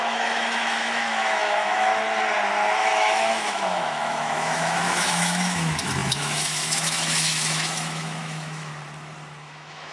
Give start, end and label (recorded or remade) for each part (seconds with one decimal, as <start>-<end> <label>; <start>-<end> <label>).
0.0-1.9 remade; 1.9-2.8 recorded; 2.8-8.7 remade; 8.7-9.4 recorded; 9.4-9.9 remade